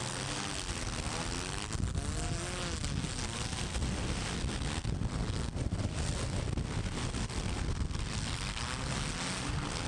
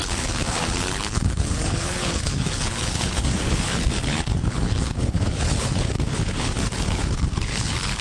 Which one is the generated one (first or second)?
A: second